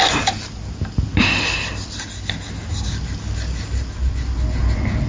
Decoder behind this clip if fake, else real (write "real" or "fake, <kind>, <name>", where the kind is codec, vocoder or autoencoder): real